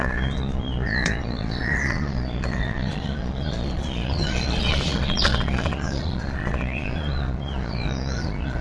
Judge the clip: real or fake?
fake